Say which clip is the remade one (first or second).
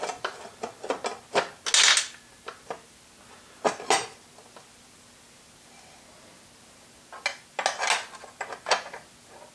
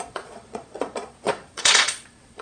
second